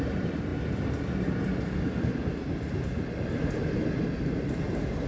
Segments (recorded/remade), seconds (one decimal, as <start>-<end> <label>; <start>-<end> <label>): 0.0-5.1 recorded